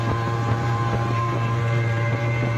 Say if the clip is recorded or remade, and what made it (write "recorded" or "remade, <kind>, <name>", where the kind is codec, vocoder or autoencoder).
remade, vocoder, BigVGAN v2